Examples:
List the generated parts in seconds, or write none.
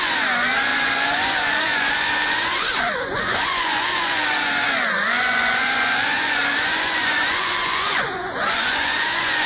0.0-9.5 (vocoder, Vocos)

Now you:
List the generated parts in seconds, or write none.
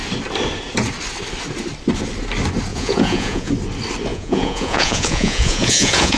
2.7-3.5 (vocoder, Vocos); 4.1-6.2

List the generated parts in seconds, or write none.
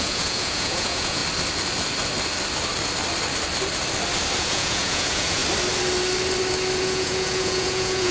0.0-1.2 (vocoder, Vocos); 4.4-5.4; 6.8-8.1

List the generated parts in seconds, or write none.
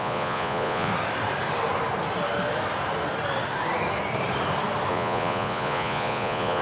0.0-0.9 (vocoder, Vocos); 4.9-6.6